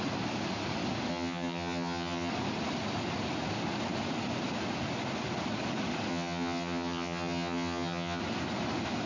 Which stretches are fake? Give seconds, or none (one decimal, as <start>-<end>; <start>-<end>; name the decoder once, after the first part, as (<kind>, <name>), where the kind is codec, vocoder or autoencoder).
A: 1.1-2.3 (vocoder, HiFi-GAN); 6.1-8.2

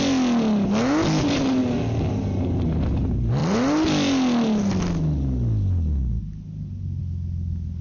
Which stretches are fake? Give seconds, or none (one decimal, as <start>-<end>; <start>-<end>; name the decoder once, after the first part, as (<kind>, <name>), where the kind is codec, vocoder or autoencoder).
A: none